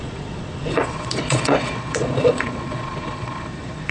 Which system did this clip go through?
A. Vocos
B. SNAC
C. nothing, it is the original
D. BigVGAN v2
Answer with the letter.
A